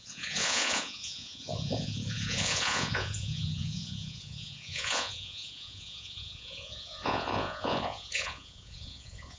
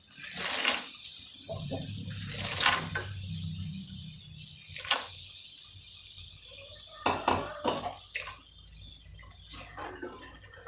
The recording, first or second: second